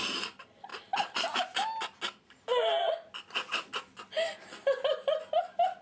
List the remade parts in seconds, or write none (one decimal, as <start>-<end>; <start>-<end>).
none